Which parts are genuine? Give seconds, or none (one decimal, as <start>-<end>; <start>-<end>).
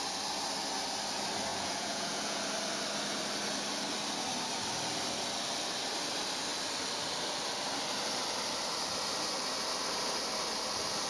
0.0-1.5; 2.4-11.1